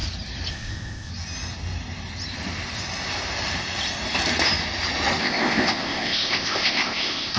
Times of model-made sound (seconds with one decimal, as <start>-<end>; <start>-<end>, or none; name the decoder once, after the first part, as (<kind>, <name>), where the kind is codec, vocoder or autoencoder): 0.5-1.1 (codec, ZipCodec); 5.2-7.4